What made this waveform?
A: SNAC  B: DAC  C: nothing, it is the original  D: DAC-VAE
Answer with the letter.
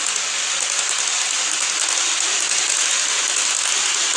C